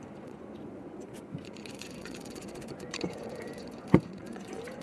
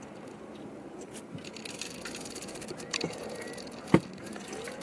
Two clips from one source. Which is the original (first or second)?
second